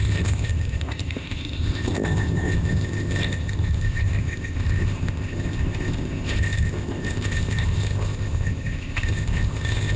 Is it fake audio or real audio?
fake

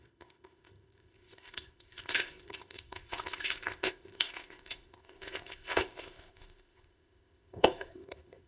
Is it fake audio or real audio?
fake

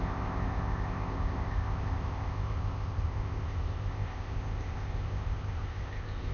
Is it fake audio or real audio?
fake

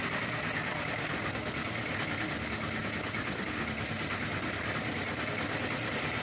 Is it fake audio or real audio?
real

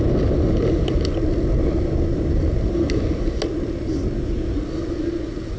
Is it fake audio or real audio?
real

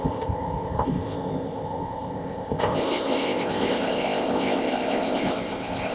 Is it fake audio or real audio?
fake